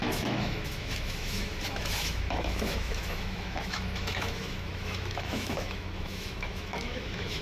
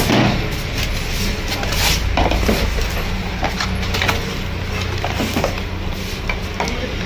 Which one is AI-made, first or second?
first